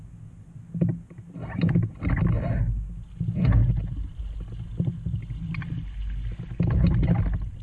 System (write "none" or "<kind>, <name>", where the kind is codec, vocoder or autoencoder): none